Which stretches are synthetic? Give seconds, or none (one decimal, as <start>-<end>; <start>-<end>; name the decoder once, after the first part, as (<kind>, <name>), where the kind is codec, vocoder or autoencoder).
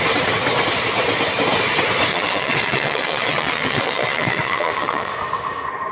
2.1-5.1 (vocoder, WaveNeXt)